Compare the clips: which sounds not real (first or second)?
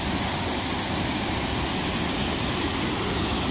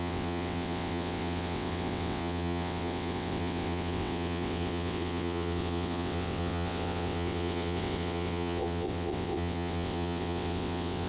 second